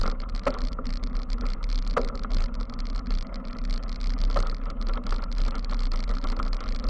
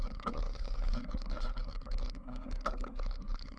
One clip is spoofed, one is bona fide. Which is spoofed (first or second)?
second